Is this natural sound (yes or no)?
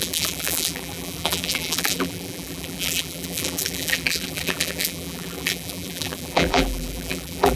no